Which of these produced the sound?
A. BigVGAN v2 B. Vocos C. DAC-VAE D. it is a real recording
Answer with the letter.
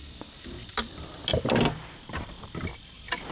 D